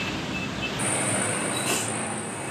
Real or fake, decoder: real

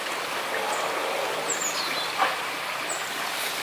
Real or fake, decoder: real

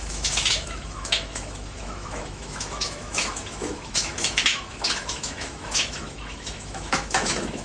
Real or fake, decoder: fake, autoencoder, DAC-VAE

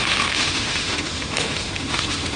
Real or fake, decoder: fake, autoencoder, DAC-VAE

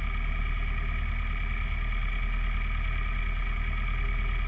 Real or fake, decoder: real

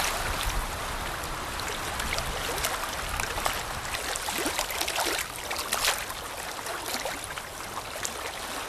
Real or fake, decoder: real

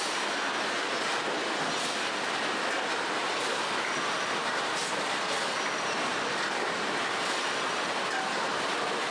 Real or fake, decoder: real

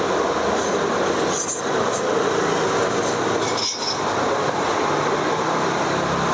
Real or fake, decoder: real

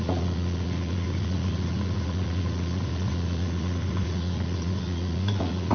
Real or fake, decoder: fake, vocoder, Vocos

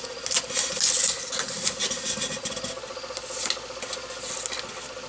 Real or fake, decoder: real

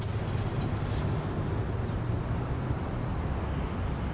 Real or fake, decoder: real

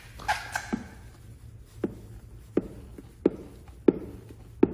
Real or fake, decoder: real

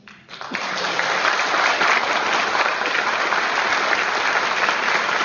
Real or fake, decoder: real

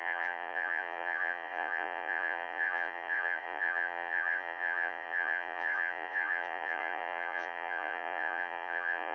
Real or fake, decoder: fake, vocoder, Vocos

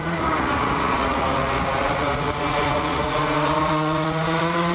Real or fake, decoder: fake, vocoder, Vocos